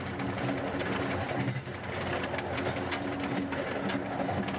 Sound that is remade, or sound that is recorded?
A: recorded